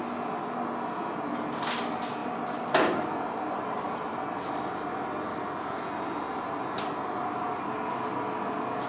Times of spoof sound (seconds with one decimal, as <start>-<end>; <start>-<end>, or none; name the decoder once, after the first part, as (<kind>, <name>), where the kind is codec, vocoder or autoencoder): 2.2-3.6 (vocoder, BigVGAN v2)